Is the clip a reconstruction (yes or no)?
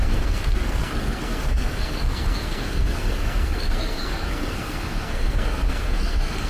yes